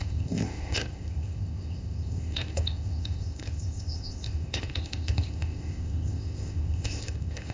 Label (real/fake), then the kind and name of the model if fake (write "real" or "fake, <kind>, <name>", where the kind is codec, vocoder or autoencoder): fake, codec, ZipCodec